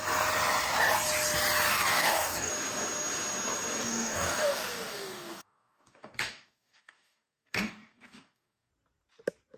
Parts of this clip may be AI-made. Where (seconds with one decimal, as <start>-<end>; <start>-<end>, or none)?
1.7-2.5; 3.8-8.7